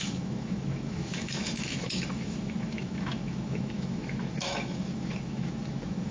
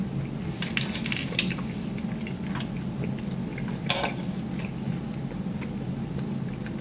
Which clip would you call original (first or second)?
second